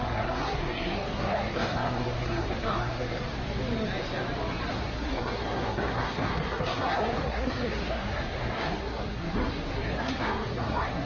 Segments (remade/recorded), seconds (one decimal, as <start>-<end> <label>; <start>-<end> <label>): 0.0-3.2 remade; 3.2-4.7 recorded; 4.7-11.1 remade